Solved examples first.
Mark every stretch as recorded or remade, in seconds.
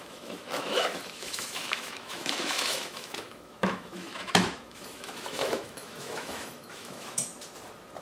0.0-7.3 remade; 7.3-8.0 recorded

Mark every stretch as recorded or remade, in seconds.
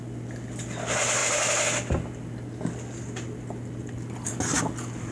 0.0-5.1 recorded